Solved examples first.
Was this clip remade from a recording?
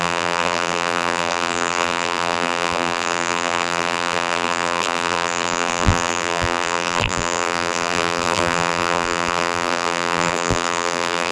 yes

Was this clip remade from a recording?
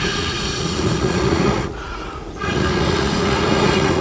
yes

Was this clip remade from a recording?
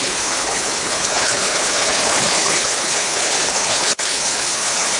yes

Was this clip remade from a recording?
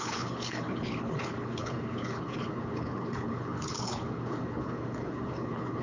yes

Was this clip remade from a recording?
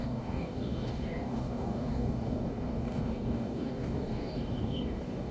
yes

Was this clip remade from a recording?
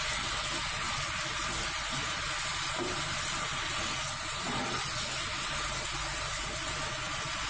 no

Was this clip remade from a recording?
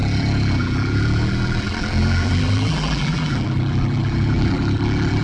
yes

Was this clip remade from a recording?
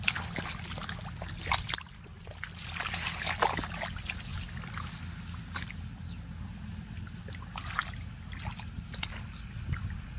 no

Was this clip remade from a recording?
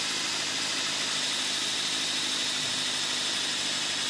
no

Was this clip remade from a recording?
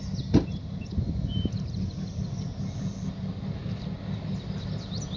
no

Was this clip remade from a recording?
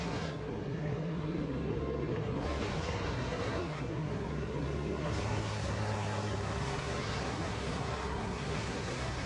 yes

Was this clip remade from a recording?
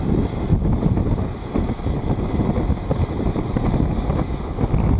no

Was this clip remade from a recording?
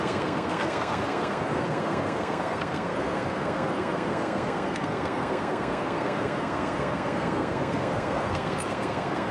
yes